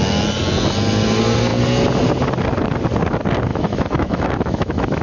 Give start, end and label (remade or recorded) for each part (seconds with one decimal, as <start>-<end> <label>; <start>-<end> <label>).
0.0-3.5 recorded; 3.5-5.0 remade